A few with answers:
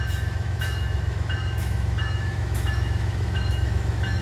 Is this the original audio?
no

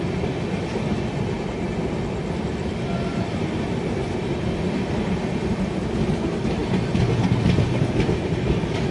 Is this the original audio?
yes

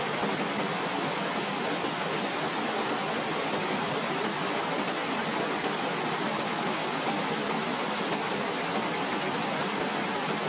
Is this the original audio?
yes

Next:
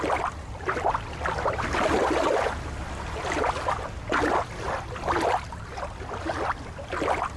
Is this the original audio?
yes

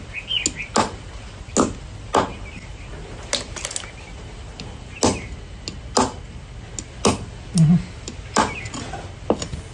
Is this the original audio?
yes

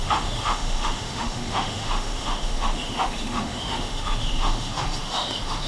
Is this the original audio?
no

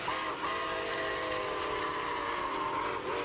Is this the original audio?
yes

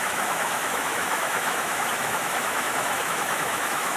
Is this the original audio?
no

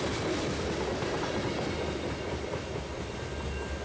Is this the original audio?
yes